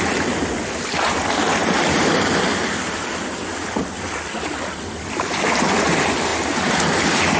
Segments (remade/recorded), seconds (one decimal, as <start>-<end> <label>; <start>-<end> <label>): 0.0-7.4 recorded